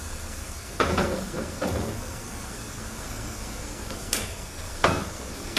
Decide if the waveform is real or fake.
fake